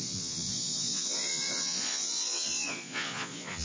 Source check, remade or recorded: remade